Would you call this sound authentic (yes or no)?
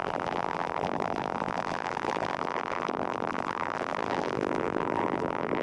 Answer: no